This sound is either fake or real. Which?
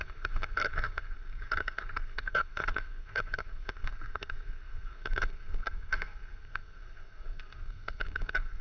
fake